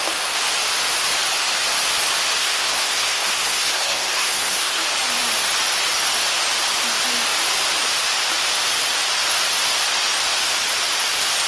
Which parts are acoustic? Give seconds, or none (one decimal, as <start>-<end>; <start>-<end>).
0.0-2.4; 4.8-11.5